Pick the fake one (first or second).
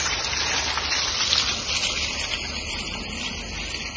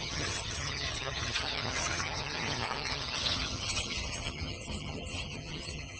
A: second